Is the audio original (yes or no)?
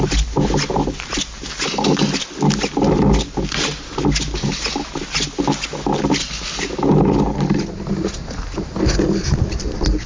yes